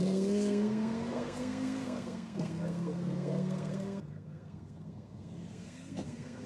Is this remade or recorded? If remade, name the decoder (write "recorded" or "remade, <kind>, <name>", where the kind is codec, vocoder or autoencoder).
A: remade, codec, SNAC